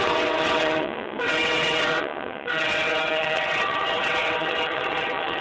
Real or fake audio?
fake